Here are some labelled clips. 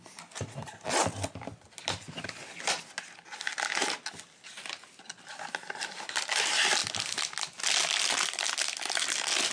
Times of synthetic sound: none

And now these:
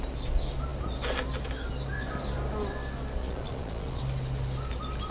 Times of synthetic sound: 3.2-4.0 (vocoder, Vocos)

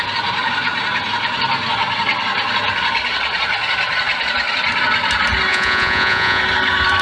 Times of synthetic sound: 5.5-6.4 (vocoder, Vocos)

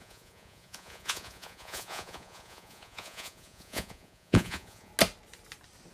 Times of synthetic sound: 0.0-4.9 (vocoder, Vocos)

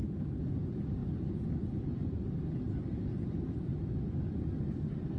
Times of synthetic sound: none

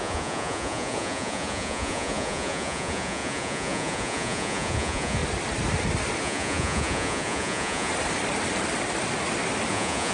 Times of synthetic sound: 0.0-5.2 (vocoder, Vocos); 6.2-7.9; 9.7-10.1

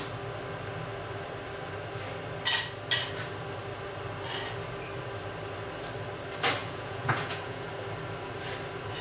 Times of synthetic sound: 6.6-7.7 (vocoder, Vocos)